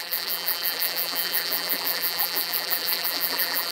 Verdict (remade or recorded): remade